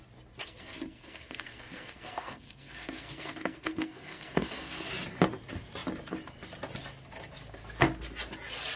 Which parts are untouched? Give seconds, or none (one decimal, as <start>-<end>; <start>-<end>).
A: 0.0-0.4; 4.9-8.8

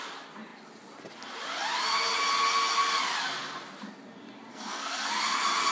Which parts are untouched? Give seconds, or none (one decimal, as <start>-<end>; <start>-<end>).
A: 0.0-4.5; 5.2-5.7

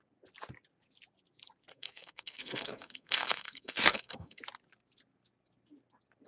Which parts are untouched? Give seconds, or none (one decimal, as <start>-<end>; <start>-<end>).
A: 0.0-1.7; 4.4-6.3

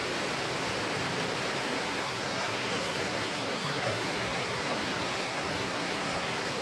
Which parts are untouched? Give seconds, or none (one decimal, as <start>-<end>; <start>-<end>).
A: 0.0-1.6

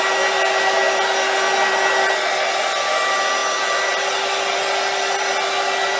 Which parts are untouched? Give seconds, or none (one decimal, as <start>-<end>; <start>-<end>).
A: 0.0-6.0

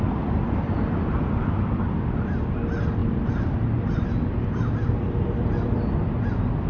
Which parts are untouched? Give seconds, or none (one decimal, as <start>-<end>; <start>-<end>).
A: 0.0-6.7

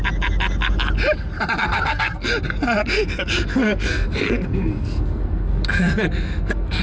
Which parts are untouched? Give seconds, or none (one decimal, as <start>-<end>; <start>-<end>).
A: 0.0-1.6; 2.3-2.8

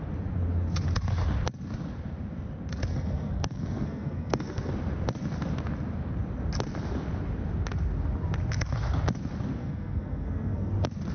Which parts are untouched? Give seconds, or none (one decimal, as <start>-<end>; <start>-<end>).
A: 0.0-2.9; 4.7-9.6; 10.7-11.1